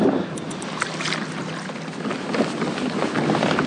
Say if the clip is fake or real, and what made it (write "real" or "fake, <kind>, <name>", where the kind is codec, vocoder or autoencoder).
real